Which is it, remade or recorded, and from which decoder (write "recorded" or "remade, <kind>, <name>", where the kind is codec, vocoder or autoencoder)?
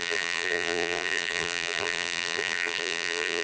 remade, vocoder, BigVGAN v2